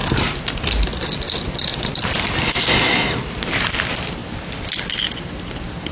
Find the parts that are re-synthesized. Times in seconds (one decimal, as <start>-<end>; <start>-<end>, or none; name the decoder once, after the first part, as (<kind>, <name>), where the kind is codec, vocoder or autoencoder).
none